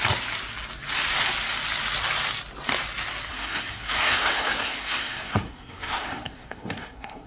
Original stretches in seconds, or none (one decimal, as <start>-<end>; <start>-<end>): 0.0-3.3